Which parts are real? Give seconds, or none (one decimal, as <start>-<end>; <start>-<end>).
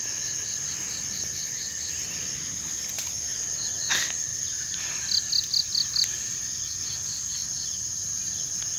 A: 0.0-4.3; 6.7-8.8